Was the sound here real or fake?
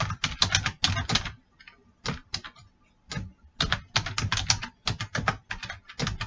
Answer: real